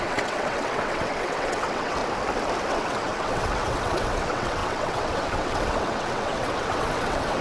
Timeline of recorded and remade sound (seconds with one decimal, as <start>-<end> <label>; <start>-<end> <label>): 0.0-2.0 remade; 2.0-2.7 recorded; 2.7-7.4 remade